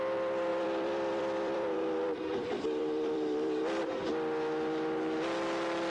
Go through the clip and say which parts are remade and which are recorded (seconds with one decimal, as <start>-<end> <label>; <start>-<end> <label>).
0.0-0.5 recorded; 0.5-3.8 remade; 3.8-5.9 recorded